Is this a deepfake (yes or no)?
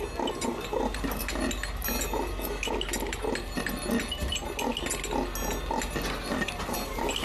no